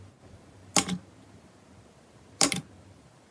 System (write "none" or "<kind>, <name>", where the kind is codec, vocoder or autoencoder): vocoder, BigVGAN v2